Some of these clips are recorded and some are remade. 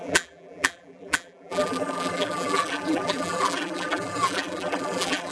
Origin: remade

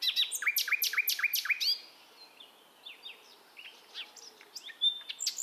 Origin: recorded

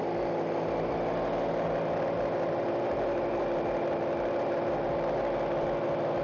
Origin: recorded